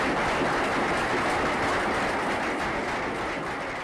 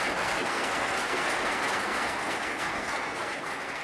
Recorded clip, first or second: first